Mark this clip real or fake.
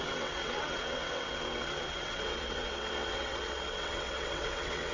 fake